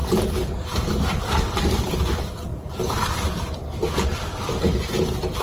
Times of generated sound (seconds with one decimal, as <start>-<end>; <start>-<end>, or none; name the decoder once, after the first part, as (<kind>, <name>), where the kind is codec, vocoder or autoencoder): 0.0-0.8 (vocoder, BigVGAN v2); 2.5-4.4